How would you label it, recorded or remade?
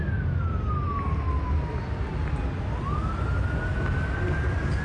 recorded